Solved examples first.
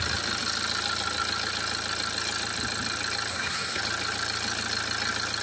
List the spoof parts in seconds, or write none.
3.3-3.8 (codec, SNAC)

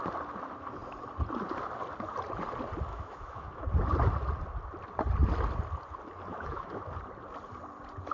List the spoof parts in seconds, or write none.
2.9-3.6 (autoencoder, DAC-VAE); 6.3-6.8